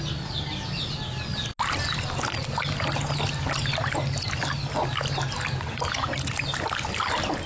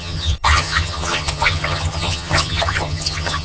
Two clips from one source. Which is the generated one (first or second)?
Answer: second